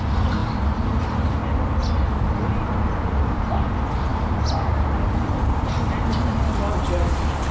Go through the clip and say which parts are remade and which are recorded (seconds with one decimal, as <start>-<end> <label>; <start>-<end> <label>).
0.0-0.4 recorded; 0.4-1.0 remade; 1.0-4.1 recorded; 4.1-5.7 remade; 5.7-7.5 recorded

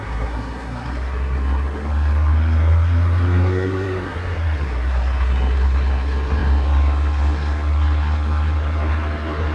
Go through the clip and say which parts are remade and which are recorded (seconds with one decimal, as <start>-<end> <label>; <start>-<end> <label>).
0.0-9.5 remade